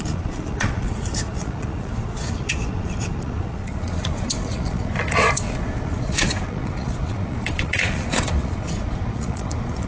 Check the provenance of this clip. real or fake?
fake